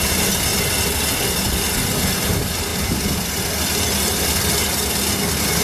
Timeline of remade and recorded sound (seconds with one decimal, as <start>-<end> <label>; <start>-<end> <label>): 0.0-5.6 recorded